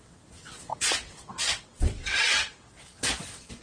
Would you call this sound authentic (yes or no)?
no